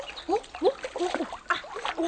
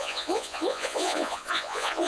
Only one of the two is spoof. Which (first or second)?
second